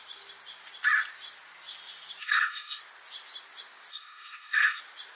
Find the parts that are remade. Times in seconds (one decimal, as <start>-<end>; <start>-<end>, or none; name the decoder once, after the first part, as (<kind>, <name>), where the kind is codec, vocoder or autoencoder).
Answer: 2.2-2.8 (codec, SNAC); 3.9-4.8